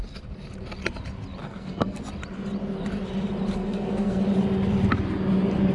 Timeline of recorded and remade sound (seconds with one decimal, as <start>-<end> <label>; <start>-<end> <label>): 0.0-1.4 recorded; 1.4-2.0 remade; 2.0-3.6 recorded; 3.6-4.2 remade; 4.2-5.7 recorded